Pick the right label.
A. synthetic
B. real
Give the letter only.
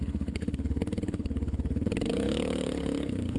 A